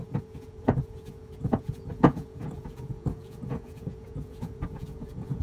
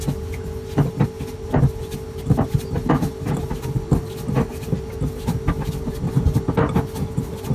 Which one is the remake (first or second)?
first